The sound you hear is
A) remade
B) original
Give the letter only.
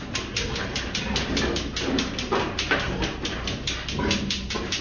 B